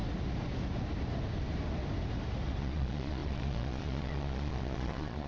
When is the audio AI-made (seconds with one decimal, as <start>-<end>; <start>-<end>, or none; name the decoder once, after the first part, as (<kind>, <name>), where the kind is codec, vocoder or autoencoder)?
2.6-5.3 (vocoder, Vocos)